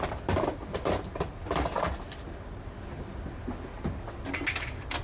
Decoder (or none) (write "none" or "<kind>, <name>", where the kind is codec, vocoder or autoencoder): none